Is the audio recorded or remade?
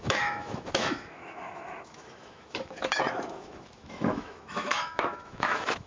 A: remade